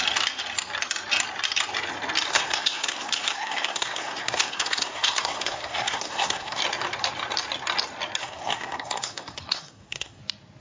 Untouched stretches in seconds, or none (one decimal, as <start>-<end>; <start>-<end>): 0.0-2.3; 6.6-8.2; 10.2-10.6